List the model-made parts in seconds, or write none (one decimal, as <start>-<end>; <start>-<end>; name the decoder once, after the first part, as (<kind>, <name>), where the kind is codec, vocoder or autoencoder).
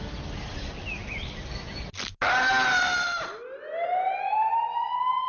none